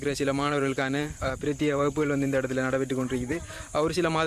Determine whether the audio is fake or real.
fake